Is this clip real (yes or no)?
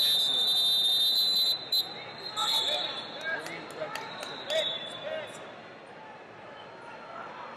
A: yes